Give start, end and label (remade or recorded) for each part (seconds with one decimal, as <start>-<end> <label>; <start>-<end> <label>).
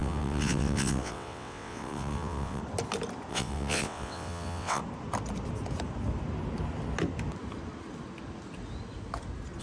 0.0-2.6 remade; 2.6-3.3 recorded; 3.3-4.8 remade; 4.8-9.6 recorded